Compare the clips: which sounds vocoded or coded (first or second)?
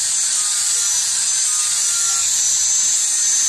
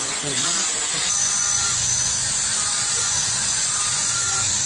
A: second